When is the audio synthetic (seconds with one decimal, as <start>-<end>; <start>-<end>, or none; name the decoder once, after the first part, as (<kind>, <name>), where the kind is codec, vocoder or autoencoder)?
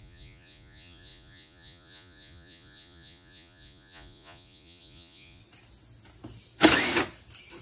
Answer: 0.0-5.4 (vocoder, Vocos)